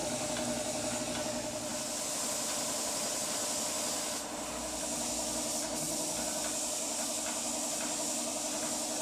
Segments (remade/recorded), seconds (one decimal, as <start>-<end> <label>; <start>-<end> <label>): 0.0-9.0 recorded